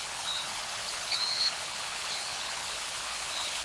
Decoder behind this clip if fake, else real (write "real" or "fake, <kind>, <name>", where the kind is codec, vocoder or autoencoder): fake, codec, HILCodec